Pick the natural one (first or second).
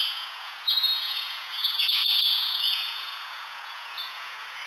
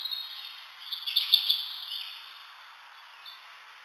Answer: second